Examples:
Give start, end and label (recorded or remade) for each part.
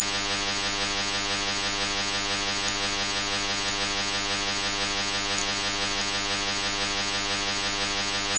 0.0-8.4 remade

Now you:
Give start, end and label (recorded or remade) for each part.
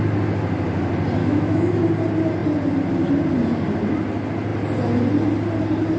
0.0-1.2 recorded; 1.2-1.8 remade; 1.8-6.0 recorded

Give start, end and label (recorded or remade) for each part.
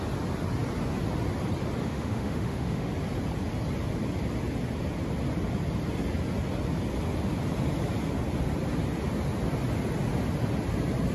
0.0-1.8 recorded; 1.8-2.9 remade; 2.9-11.1 recorded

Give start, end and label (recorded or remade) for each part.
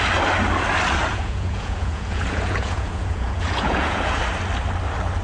0.0-1.1 recorded; 1.1-4.2 remade; 4.2-5.2 recorded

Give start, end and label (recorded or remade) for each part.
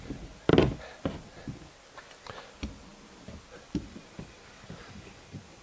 0.0-5.6 recorded